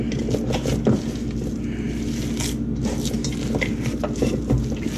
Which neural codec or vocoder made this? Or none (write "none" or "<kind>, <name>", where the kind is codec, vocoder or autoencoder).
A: none